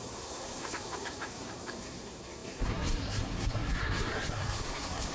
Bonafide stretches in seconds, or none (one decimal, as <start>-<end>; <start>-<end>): none